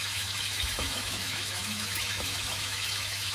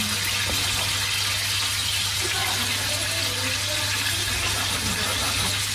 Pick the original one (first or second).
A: second